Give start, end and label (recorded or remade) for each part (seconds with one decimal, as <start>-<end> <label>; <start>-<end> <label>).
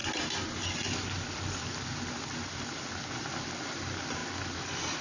0.0-5.0 recorded